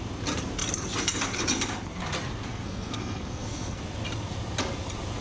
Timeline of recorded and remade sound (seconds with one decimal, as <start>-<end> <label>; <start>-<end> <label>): 0.0-2.5 recorded; 2.5-3.8 remade; 3.8-5.2 recorded

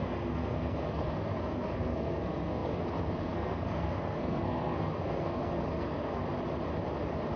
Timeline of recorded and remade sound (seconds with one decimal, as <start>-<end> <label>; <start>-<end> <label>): 0.0-6.2 remade; 6.2-7.4 recorded

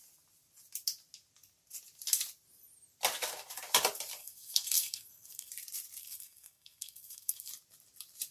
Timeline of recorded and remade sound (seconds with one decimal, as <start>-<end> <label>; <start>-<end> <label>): 0.0-4.2 recorded; 4.2-5.5 remade; 5.5-6.0 recorded; 6.0-7.5 remade; 7.5-8.3 recorded

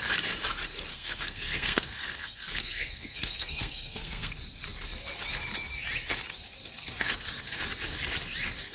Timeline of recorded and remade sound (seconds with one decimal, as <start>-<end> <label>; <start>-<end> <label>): 0.0-0.9 recorded; 0.9-4.3 remade; 4.3-8.7 recorded